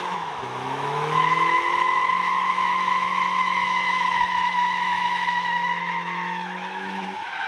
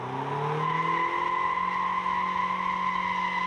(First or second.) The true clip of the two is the second